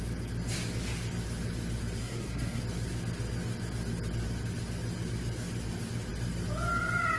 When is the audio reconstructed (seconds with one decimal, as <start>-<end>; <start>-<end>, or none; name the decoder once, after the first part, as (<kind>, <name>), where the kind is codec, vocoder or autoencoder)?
2.0-2.6 (codec, SNAC)